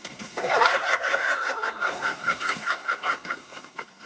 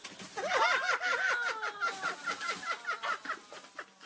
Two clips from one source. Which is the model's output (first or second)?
first